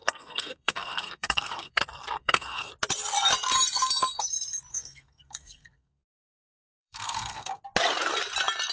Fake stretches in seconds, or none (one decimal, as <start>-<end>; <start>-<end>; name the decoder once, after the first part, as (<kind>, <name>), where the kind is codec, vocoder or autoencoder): 0.0-1.8 (codec, SNAC); 2.2-2.7; 4.7-7.6

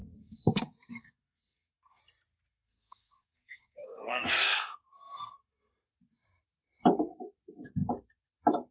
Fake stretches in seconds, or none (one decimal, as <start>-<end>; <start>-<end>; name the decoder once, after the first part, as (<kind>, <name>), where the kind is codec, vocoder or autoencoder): 0.0-2.0 (codec, SNAC); 2.5-5.7